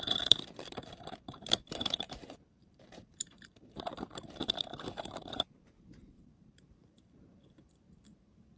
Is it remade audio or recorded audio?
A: remade